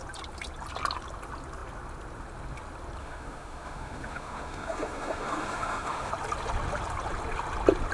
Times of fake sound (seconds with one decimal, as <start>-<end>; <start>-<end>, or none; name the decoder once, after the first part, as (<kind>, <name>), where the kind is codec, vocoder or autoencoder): 3.0-6.1 (autoencoder, DAC-VAE)